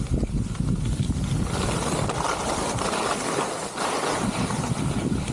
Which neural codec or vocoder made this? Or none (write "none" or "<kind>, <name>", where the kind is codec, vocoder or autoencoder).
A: none